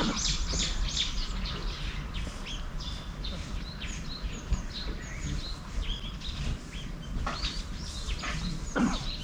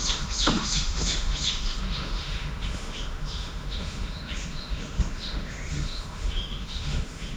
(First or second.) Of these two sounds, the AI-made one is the second